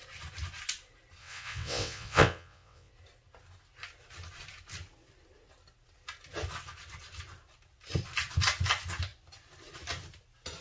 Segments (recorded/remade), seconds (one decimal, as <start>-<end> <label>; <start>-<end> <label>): 0.0-1.2 recorded; 1.2-2.9 remade; 2.9-10.6 recorded